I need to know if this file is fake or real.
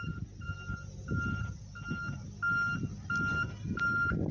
real